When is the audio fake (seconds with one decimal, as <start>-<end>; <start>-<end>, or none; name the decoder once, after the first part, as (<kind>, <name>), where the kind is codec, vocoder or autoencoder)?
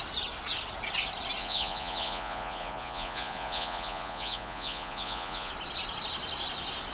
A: 1.4-5.5 (vocoder, Vocos)